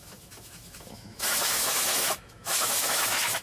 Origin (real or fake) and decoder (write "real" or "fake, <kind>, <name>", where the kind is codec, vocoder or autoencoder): fake, autoencoder, DAC-VAE